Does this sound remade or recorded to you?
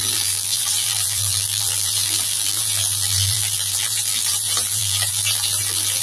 remade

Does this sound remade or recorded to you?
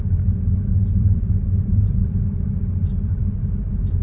remade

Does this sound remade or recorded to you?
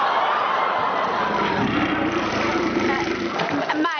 remade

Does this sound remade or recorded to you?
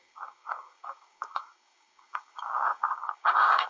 remade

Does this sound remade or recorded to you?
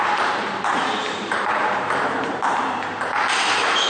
remade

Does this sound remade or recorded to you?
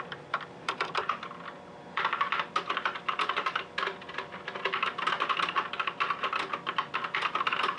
remade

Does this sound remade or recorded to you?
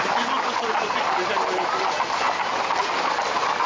recorded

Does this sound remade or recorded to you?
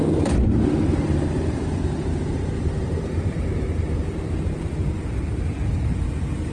remade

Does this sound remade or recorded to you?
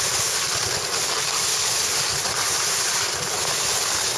recorded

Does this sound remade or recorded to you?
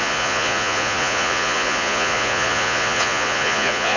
remade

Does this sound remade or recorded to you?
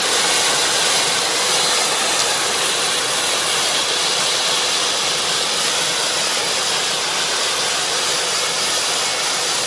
recorded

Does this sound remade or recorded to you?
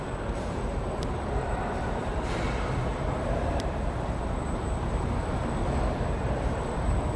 remade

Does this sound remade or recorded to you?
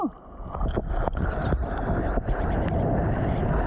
recorded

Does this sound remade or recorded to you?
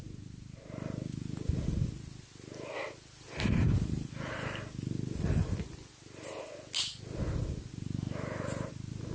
recorded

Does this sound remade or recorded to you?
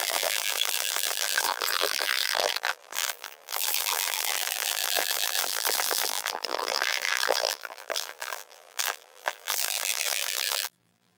remade